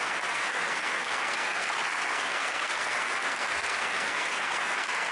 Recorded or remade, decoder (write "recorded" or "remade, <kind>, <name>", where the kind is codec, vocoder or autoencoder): remade, codec, SNAC